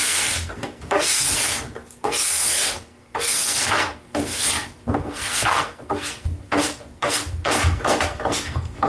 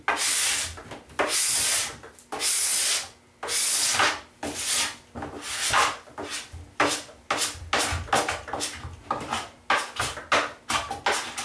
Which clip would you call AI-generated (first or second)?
first